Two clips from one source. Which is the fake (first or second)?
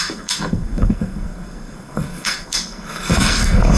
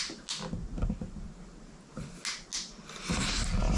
first